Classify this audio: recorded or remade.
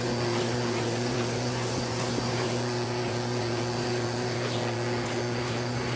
remade